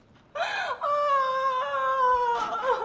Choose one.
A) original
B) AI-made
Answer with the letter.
A